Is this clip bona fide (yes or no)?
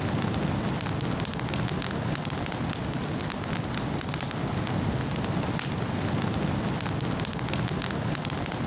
yes